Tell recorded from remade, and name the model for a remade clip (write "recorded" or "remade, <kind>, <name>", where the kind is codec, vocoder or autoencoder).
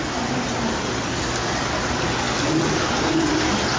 recorded